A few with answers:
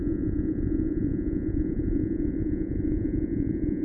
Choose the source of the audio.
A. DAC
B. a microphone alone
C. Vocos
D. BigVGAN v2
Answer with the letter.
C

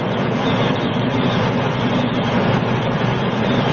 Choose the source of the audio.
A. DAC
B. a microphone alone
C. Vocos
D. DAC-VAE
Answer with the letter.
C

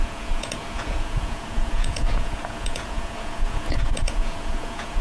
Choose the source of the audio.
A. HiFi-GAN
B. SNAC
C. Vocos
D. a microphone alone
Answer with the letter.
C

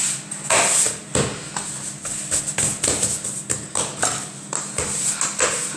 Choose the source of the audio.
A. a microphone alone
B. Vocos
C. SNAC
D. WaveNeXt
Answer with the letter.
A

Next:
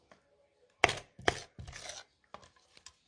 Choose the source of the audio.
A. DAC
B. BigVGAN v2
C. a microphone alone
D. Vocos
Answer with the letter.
C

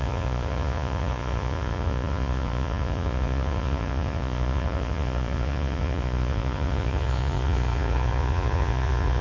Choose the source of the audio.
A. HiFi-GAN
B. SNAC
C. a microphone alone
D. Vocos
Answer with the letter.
D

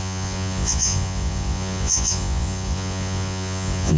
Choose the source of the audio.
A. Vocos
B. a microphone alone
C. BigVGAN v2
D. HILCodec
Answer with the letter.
A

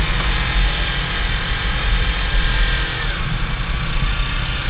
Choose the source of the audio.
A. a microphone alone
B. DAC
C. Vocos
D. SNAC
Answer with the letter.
A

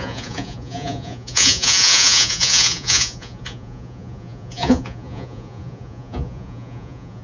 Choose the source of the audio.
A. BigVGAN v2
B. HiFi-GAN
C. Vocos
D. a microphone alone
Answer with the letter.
C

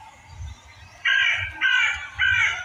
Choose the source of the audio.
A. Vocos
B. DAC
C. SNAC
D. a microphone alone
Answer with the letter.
D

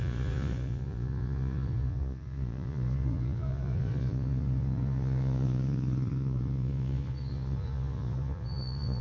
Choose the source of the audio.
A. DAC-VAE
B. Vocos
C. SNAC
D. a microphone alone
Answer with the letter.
B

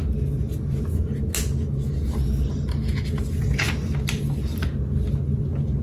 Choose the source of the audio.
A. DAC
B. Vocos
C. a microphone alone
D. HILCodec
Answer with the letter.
C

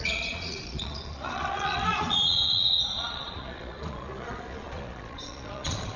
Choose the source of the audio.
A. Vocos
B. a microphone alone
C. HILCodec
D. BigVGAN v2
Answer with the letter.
A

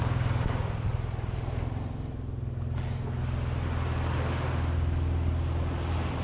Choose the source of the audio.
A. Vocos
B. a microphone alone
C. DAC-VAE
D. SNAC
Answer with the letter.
B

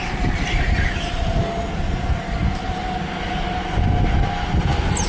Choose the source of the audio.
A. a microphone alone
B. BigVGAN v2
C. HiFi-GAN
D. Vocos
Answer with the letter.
A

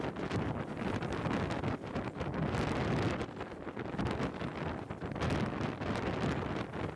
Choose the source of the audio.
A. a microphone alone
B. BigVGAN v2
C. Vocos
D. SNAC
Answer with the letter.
A